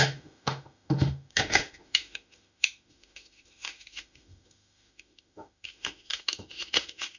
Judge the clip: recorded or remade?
remade